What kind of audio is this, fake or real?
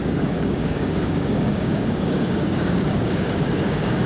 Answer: fake